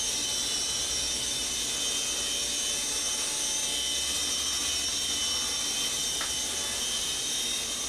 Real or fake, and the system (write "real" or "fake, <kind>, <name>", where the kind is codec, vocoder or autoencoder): real